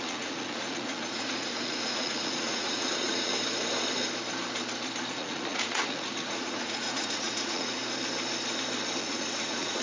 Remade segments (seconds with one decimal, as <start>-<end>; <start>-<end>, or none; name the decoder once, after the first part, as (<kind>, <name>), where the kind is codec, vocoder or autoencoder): 0.0-3.3 (vocoder, Vocos); 5.1-7.8; 9.0-9.8

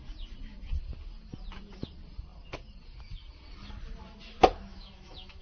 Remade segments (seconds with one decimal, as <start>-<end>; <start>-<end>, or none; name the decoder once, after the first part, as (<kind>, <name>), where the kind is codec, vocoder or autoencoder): 4.7-5.4 (autoencoder, DAC-VAE)